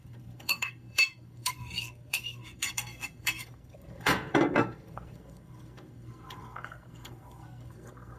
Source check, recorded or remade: remade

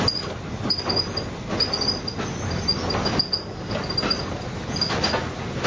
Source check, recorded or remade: recorded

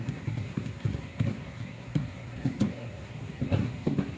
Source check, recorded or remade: remade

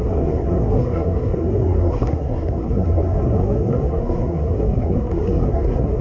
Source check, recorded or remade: remade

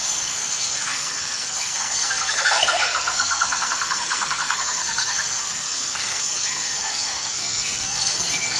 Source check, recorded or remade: remade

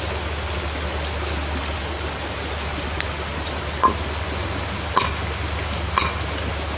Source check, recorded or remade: recorded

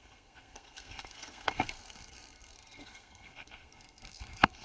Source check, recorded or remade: remade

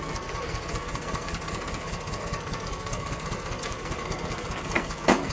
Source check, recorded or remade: remade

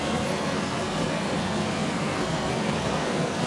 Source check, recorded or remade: remade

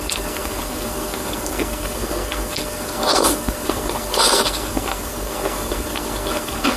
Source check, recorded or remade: remade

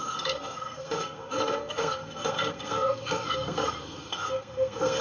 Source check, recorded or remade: remade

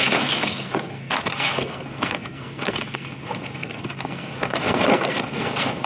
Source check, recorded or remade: remade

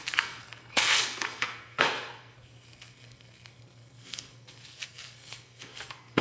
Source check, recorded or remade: remade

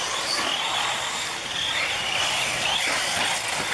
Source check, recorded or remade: recorded